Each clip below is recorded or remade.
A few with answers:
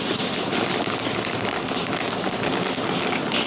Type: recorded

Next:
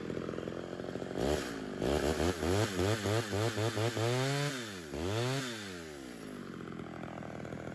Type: recorded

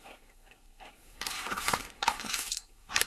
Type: remade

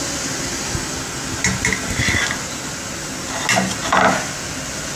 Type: recorded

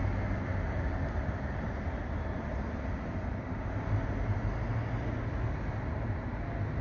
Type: recorded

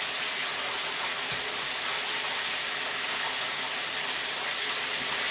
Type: recorded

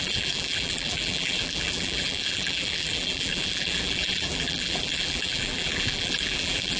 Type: remade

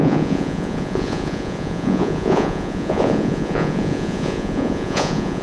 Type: remade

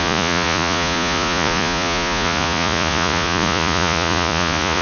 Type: remade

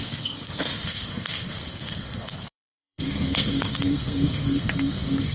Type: remade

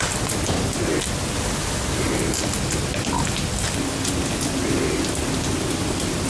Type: recorded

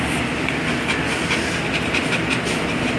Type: recorded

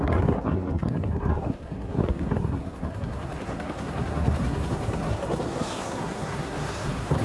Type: remade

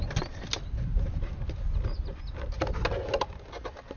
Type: recorded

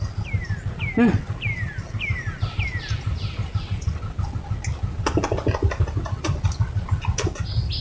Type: recorded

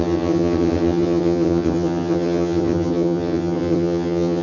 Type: remade